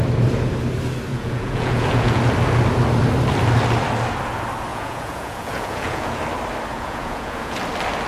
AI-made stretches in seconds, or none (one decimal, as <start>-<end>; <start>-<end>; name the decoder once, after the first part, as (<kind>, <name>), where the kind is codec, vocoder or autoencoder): 1.1-2.2 (vocoder, Vocos); 4.7-6.2; 6.7-7.6